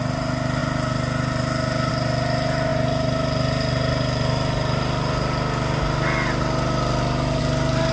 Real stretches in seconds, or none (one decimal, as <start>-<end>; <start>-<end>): 0.0-7.9